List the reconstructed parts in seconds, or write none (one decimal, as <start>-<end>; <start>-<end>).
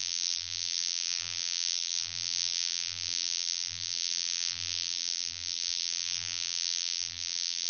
0.0-7.7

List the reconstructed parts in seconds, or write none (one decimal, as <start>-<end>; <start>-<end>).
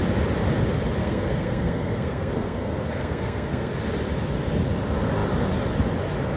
1.0-3.7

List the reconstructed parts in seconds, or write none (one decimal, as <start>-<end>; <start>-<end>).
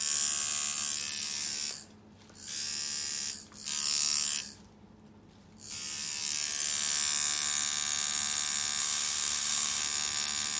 8.8-9.8